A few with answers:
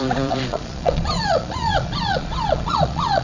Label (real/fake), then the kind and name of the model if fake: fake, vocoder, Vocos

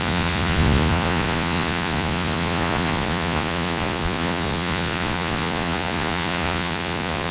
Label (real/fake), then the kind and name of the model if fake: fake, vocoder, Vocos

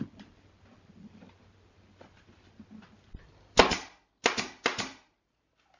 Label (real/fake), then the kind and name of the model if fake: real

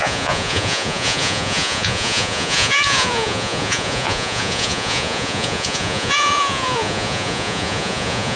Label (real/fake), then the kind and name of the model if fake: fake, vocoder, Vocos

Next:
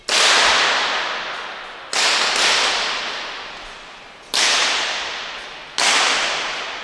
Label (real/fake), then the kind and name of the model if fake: real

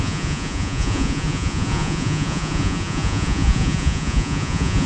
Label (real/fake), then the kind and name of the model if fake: fake, vocoder, Vocos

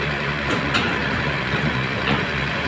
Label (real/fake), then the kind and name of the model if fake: fake, vocoder, Vocos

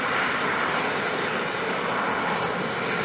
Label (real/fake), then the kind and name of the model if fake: real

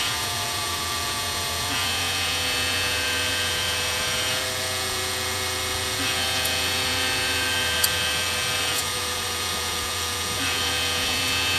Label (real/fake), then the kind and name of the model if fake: fake, vocoder, Vocos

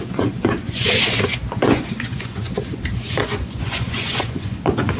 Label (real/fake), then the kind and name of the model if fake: fake, vocoder, Vocos